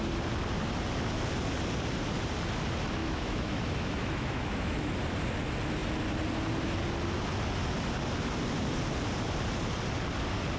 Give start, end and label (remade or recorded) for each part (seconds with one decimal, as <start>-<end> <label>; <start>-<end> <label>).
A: 0.0-3.0 recorded; 3.0-4.9 remade; 4.9-10.6 recorded